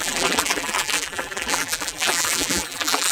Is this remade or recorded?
remade